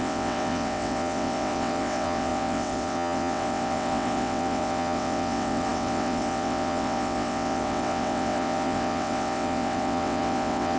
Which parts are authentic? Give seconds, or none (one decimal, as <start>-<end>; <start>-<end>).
none

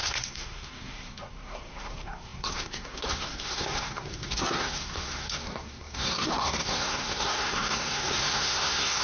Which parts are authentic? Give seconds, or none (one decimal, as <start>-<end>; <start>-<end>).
none

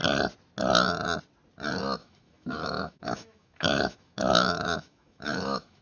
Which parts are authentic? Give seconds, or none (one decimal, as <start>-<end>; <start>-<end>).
0.0-2.0

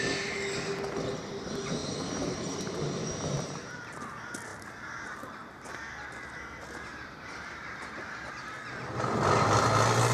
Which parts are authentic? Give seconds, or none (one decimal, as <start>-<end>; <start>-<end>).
0.0-1.8; 4.0-6.9; 8.1-10.1

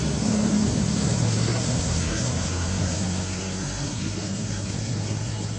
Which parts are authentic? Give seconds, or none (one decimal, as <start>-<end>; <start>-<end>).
none

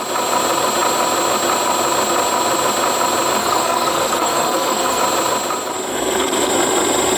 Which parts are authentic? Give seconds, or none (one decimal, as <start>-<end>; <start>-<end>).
0.0-3.4; 5.0-5.9; 6.5-7.2

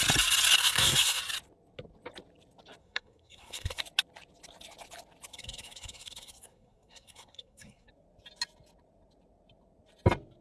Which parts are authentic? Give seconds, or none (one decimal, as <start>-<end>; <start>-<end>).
0.0-0.6; 1.2-2.8; 3.8-5.3; 7.9-10.4